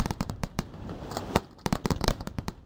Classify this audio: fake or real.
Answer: fake